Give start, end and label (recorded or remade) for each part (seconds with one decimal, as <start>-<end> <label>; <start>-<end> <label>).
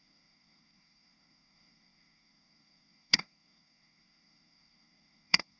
0.0-5.6 remade